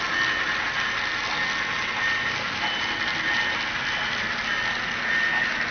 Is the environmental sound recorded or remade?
recorded